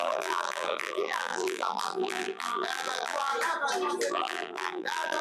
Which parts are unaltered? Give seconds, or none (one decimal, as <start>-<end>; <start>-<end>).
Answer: 3.3-4.1